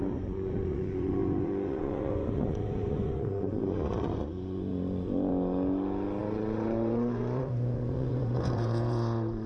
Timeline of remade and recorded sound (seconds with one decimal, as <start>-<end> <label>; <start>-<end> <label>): 0.0-5.3 remade; 5.3-6.2 recorded; 6.2-9.5 remade